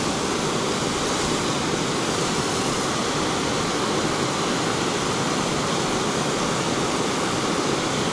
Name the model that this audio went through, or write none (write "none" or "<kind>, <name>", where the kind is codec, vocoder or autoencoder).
none